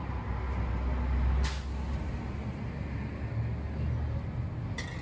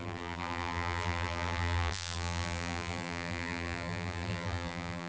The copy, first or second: second